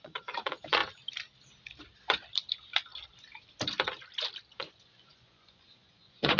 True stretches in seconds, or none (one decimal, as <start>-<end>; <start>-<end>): 0.8-4.6